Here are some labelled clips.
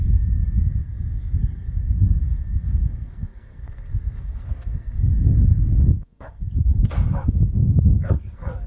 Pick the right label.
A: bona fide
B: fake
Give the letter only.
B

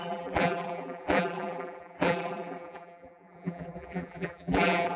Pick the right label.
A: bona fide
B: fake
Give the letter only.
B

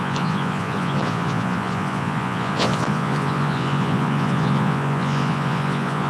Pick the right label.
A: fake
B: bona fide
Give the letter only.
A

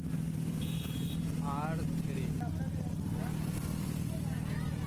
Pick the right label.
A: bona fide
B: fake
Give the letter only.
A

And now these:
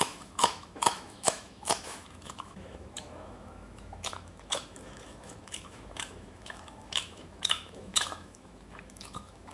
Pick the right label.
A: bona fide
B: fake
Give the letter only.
B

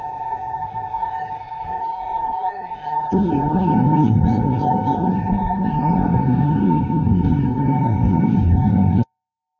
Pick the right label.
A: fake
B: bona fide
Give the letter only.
A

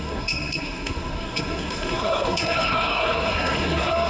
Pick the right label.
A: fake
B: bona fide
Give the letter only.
A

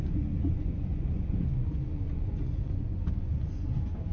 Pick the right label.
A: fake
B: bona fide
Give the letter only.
A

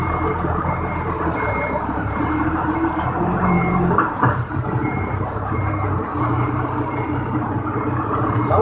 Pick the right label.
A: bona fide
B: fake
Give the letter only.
B